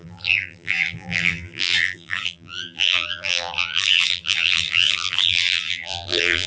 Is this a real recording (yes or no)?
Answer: no